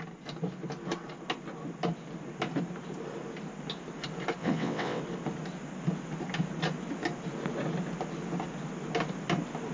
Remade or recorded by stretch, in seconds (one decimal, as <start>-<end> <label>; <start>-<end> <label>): 0.0-4.4 recorded; 4.4-5.0 remade; 5.0-9.7 recorded